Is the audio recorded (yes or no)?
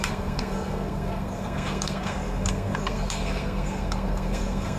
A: no